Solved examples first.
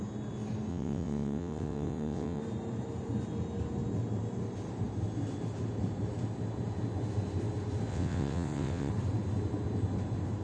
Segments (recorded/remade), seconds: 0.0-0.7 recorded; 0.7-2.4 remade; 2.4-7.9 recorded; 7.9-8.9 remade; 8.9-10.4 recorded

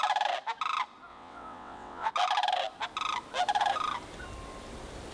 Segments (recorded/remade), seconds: 0.0-1.1 recorded; 1.1-2.1 remade; 2.1-5.1 recorded

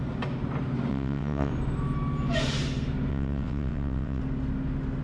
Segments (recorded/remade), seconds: 0.0-0.9 recorded; 0.9-1.5 remade; 1.5-3.1 recorded; 3.1-4.2 remade; 4.2-5.0 recorded

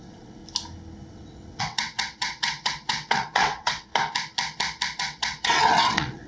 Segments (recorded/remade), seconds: 0.0-0.4 remade; 0.4-1.1 recorded; 1.1-3.9 remade; 3.9-5.0 recorded; 5.0-6.3 remade